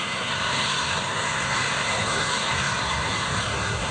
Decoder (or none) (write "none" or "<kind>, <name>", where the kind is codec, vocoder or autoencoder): codec, SNAC